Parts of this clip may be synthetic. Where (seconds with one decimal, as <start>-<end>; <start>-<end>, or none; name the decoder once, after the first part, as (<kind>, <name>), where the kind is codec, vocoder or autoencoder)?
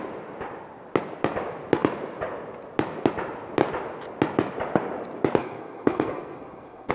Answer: 5.4-6.9 (codec, SNAC)